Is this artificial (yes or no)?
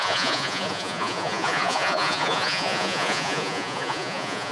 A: yes